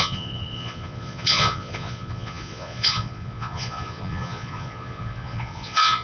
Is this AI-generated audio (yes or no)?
yes